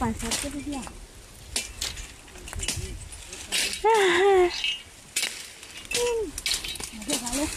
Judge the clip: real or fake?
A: real